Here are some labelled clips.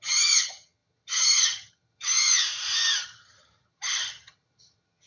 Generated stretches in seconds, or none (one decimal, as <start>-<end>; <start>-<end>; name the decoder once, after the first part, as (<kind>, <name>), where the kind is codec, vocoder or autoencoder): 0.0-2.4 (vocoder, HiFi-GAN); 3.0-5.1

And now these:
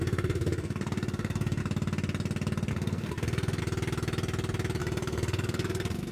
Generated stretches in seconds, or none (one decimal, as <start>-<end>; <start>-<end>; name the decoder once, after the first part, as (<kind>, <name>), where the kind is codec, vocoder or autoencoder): 0.0-1.6 (codec, SNAC); 2.7-3.6; 4.8-6.1

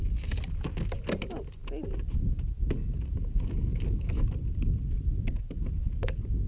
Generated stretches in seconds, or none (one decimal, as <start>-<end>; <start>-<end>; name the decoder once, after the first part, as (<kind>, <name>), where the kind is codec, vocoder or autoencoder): 3.7-4.2 (autoencoder, DAC-VAE)

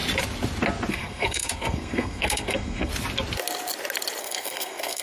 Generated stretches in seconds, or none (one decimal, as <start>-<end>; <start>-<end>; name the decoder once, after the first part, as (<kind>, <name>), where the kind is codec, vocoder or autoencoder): 0.9-2.9 (codec, SNAC); 4.2-5.0

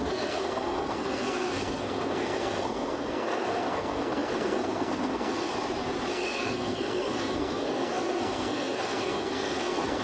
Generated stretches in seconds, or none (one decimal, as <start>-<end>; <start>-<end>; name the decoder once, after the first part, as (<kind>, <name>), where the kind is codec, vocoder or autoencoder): 0.0-5.5 (codec, SNAC); 6.1-10.0